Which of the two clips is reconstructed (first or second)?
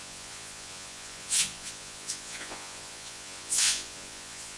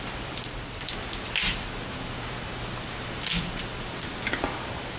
first